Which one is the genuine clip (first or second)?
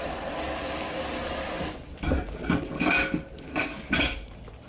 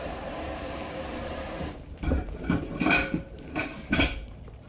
first